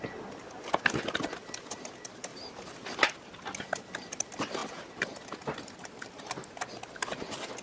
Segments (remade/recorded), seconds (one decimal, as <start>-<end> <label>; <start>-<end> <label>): 0.0-2.3 recorded; 2.3-3.0 remade; 3.0-4.6 recorded; 4.6-6.7 remade; 6.7-7.6 recorded